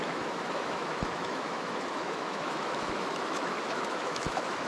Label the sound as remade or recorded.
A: remade